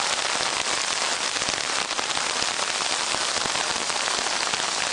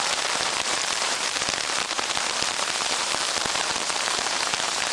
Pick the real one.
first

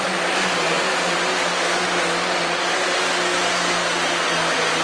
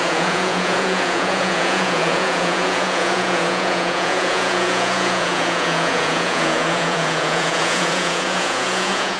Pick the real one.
first